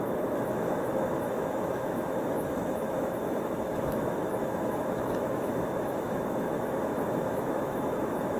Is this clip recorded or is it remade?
remade